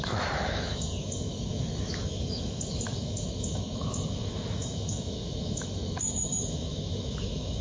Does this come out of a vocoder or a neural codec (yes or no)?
yes